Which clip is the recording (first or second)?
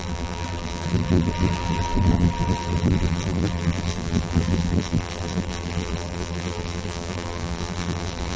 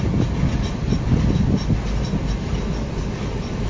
second